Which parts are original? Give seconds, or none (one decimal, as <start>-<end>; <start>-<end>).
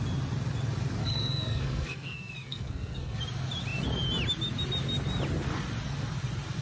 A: 0.0-1.0; 3.2-6.6